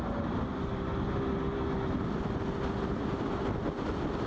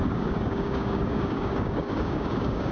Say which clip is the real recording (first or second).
first